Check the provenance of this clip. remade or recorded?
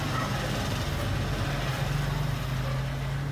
recorded